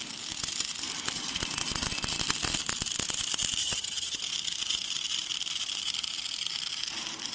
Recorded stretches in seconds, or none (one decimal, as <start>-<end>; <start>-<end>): 0.0-3.6; 4.2-7.3

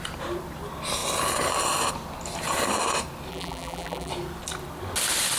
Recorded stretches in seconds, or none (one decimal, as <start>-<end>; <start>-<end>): 0.0-3.3; 4.1-5.4

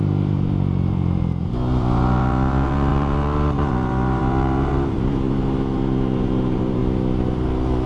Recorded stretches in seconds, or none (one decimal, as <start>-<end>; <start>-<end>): 6.8-7.9

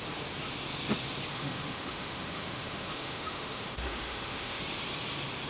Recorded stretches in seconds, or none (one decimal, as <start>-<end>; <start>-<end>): 0.0-1.3; 4.6-5.5

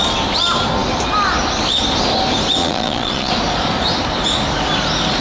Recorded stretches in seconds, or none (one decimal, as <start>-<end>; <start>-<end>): 0.0-2.6; 3.3-5.2

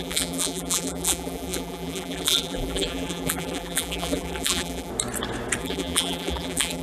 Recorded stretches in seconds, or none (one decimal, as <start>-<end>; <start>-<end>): 4.9-5.6

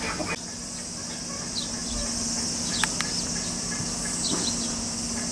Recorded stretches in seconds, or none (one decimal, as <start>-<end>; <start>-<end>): 0.0-5.3

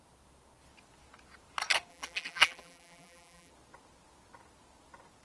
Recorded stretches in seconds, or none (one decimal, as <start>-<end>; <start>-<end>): 0.0-1.9; 3.5-5.2